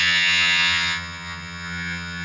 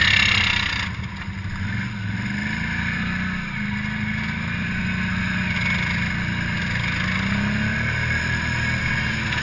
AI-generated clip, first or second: first